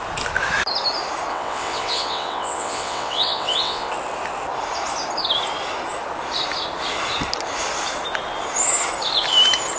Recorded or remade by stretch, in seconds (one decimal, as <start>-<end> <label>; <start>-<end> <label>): 0.0-1.3 recorded; 1.3-3.9 remade; 3.9-9.8 recorded